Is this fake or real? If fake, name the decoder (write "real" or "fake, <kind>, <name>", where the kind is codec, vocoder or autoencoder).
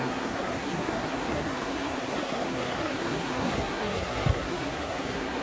fake, codec, SNAC